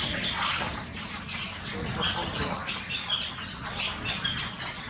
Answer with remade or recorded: recorded